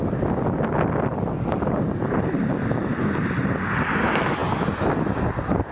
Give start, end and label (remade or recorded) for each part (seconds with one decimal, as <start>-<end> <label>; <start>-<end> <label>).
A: 0.0-5.7 recorded